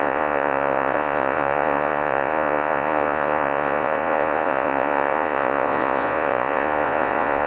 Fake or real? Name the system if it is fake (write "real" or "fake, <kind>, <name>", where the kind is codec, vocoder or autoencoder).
fake, vocoder, Vocos